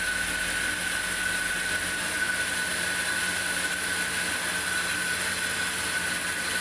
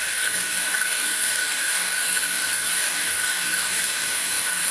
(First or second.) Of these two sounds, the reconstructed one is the second